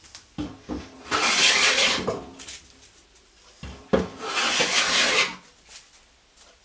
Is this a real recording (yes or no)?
yes